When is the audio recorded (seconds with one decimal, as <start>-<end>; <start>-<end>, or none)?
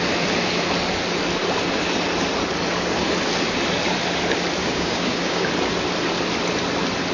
0.0-4.6; 5.5-7.1